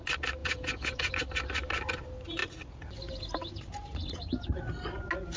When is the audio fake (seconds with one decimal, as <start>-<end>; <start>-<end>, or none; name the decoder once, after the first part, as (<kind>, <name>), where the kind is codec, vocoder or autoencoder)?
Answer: 0.4-1.1 (vocoder, Vocos)